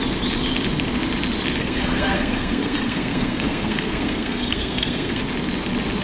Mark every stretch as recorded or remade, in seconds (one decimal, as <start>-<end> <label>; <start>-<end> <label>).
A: 0.0-1.6 recorded; 1.6-5.2 remade; 5.2-6.0 recorded